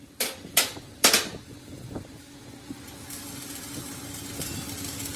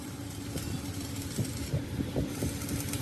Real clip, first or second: first